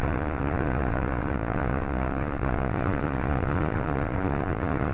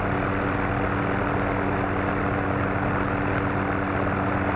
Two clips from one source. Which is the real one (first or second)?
second